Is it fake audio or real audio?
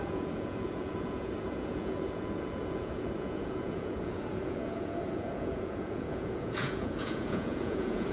fake